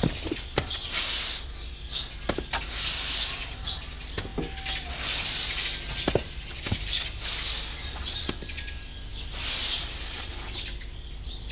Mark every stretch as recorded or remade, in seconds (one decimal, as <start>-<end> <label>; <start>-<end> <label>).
0.0-11.5 recorded